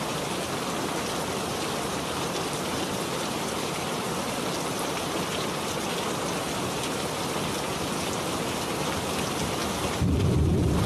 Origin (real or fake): fake